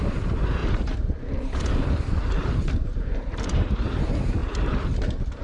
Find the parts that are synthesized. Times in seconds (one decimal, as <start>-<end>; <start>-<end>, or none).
0.0-4.4